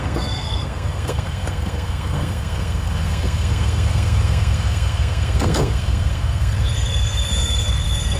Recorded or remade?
remade